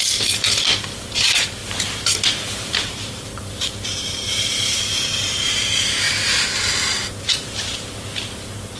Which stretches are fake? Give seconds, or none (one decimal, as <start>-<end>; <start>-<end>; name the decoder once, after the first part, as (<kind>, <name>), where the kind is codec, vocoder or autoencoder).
1.6-6.1 (vocoder, BigVGAN v2)